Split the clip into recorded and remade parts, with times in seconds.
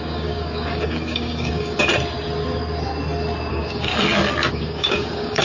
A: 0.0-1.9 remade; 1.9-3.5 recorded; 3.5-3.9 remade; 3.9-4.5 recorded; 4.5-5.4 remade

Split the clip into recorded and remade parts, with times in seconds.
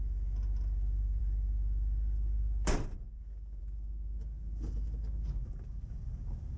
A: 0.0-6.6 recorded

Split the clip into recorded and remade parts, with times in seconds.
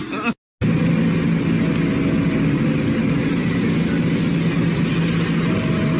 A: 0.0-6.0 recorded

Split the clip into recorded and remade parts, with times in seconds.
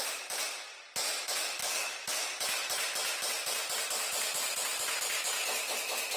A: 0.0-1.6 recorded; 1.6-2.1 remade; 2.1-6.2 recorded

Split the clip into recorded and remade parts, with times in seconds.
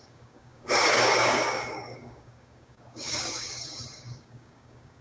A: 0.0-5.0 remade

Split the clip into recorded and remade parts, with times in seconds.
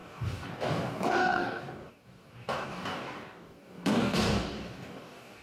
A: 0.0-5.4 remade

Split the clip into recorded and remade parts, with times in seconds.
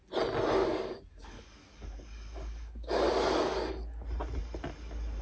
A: 0.0-0.6 recorded; 0.6-3.7 remade; 3.7-5.2 recorded